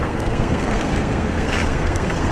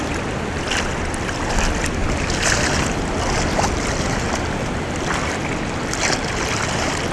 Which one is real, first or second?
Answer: second